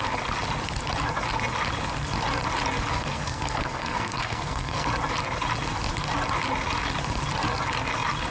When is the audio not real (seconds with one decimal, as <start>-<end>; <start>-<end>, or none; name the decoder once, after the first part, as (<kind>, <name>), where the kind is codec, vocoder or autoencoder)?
2.9-4.9 (codec, SNAC)